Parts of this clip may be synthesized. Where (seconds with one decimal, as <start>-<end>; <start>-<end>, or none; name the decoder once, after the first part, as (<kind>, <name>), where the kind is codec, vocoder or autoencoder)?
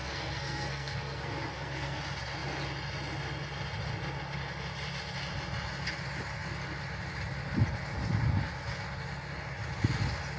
0.0-2.0 (codec, SNAC)